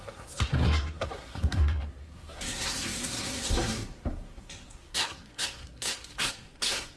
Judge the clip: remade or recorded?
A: remade